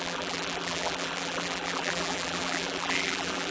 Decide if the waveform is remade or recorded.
remade